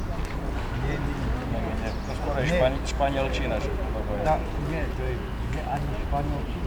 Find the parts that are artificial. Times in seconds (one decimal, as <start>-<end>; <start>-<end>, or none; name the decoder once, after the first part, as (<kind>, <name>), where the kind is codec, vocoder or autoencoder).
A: none

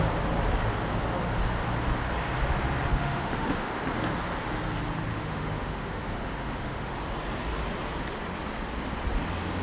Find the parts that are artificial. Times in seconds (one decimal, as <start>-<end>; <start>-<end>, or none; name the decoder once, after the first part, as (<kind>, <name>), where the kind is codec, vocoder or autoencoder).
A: 2.9-3.8 (autoencoder, DAC-VAE); 5.1-6.9

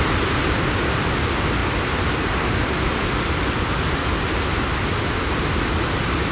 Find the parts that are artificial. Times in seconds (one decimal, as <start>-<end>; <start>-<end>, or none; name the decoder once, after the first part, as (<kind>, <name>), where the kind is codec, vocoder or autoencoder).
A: none

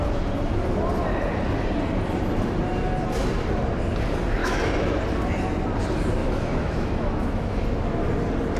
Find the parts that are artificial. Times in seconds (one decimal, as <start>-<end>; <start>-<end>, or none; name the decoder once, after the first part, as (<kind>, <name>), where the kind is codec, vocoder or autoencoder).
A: 4.4-5.0 (autoencoder, DAC-VAE); 6.2-7.6

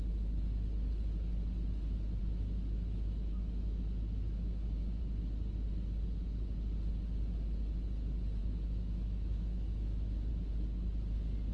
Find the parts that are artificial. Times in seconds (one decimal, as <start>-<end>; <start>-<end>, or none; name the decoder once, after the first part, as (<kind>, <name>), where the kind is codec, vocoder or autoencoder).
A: 2.2-5.0 (autoencoder, DAC-VAE); 8.4-10.3

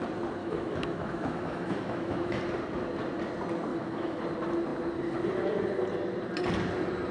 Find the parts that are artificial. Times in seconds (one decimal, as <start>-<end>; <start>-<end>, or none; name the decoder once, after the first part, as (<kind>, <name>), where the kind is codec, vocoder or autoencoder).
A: 0.4-2.4 (autoencoder, DAC-VAE); 3.7-4.2

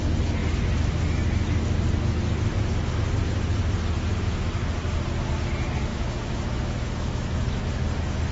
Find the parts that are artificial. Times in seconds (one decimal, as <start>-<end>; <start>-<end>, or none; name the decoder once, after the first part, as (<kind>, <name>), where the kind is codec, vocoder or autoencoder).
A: 5.9-7.6 (autoencoder, DAC-VAE)